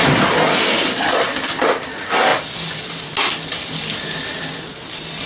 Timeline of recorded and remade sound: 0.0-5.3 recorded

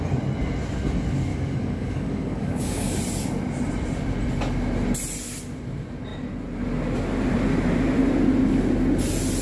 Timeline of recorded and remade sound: 0.0-1.3 recorded; 1.3-3.0 remade; 3.0-9.4 recorded

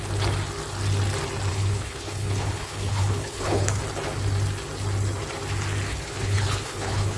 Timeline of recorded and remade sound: 0.0-1.5 recorded; 1.5-3.8 remade; 3.8-5.9 recorded; 5.9-7.2 remade

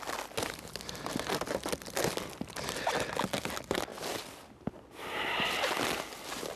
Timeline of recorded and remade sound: 0.0-6.6 recorded

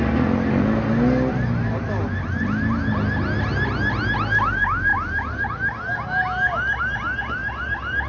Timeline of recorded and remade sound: 0.0-8.1 recorded

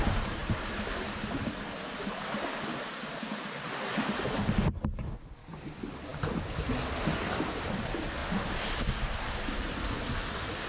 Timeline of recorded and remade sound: 0.0-6.1 remade; 6.1-7.4 recorded; 7.4-8.2 remade; 8.2-9.5 recorded; 9.5-10.7 remade